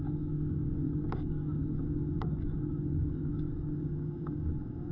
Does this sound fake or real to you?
fake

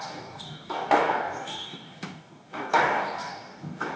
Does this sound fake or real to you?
fake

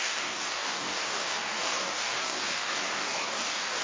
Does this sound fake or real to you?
fake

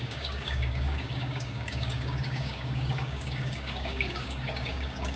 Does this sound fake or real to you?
fake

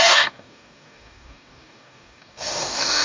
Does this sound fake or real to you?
fake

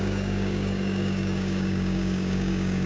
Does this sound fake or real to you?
fake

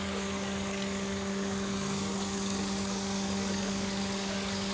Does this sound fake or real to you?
fake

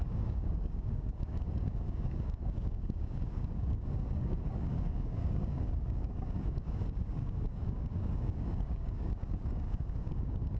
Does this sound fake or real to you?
fake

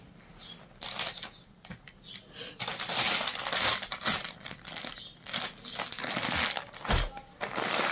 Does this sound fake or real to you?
real